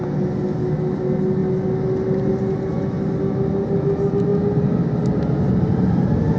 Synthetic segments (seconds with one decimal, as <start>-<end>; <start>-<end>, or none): none